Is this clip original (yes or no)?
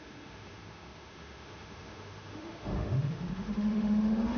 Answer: no